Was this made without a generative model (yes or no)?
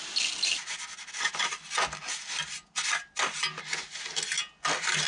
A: yes